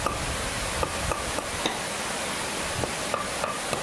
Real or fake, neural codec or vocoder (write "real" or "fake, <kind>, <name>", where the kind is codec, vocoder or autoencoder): fake, vocoder, BigVGAN v2